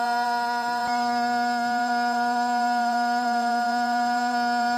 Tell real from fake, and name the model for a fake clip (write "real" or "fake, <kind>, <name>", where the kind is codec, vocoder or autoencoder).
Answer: fake, vocoder, BigVGAN v2